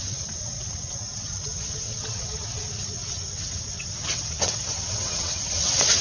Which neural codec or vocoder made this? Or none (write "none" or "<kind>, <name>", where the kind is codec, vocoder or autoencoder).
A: vocoder, WaveNeXt